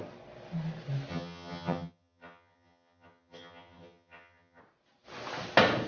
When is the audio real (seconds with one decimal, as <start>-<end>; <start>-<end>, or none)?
0.0-1.1; 4.6-5.9